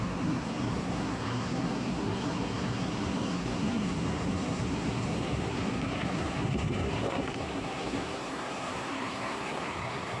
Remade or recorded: remade